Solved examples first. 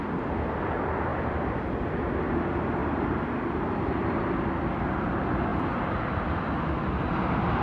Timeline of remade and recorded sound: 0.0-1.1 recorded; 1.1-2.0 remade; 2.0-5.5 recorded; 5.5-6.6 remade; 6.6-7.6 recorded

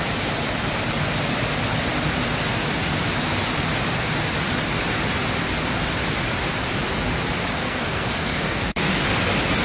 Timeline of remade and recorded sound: 0.0-7.6 recorded; 7.6-8.9 remade; 8.9-9.6 recorded

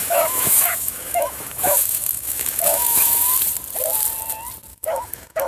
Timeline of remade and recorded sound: 0.0-3.3 remade; 3.3-4.7 recorded; 4.7-5.5 remade

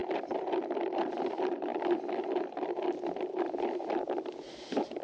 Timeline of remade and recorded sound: 0.0-5.0 remade

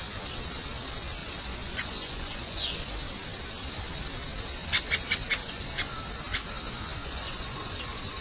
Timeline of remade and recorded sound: 0.0-1.2 recorded; 1.2-2.9 remade; 2.9-5.4 recorded; 5.4-5.9 remade; 5.9-7.0 recorded; 7.0-8.2 remade

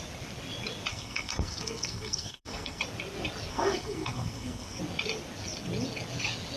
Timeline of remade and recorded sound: 0.0-0.9 recorded; 0.9-2.8 remade; 2.8-3.5 recorded; 3.5-4.8 remade; 4.8-6.6 recorded